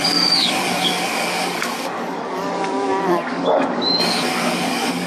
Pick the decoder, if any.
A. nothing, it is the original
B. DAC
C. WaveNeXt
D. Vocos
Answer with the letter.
B